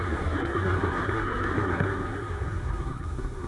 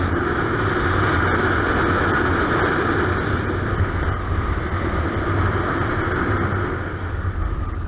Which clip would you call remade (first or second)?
first